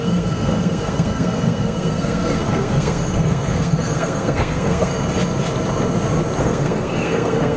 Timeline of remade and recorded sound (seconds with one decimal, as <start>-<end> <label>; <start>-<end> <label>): 0.0-4.9 remade; 4.9-6.4 recorded; 6.4-7.6 remade